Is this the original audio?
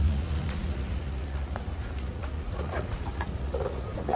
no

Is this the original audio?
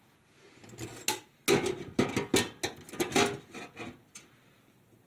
yes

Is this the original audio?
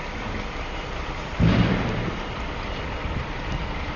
no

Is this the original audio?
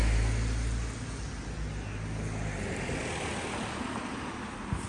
yes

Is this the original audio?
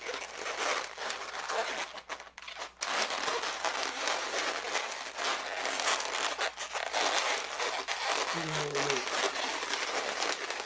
yes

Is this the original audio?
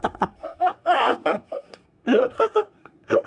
no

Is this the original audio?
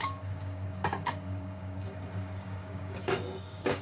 no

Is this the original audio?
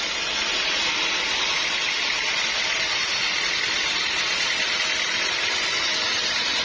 yes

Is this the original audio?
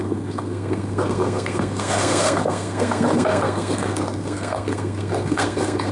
no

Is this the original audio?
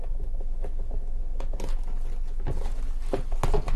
yes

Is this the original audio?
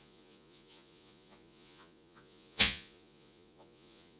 no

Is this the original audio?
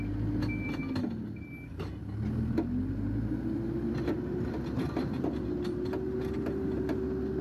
yes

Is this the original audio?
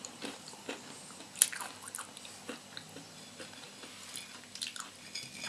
yes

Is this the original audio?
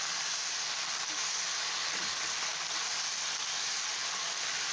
yes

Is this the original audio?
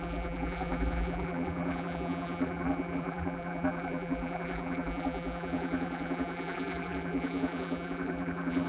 no